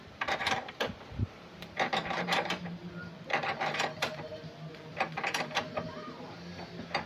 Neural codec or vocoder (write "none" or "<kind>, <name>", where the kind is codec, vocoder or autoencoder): vocoder, BigVGAN v2